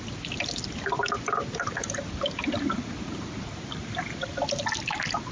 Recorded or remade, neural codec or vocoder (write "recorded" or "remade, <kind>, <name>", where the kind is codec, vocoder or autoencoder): recorded